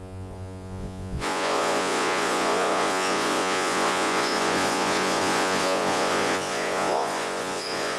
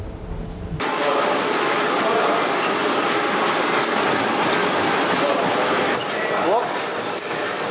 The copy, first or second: first